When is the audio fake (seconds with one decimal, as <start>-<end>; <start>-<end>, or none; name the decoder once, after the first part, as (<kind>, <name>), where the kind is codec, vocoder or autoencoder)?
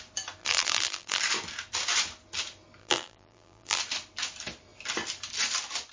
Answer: 0.4-1.2 (vocoder, BigVGAN v2); 2.8-3.8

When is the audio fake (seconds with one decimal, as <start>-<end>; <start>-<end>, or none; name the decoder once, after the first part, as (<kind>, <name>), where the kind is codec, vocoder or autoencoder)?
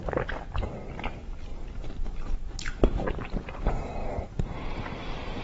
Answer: 1.5-3.4 (vocoder, BigVGAN v2); 4.0-5.4